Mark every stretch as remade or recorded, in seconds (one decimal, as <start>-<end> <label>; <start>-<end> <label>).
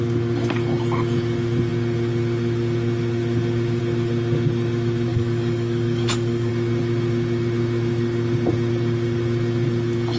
0.0-5.1 recorded; 5.1-6.5 remade; 6.5-10.2 recorded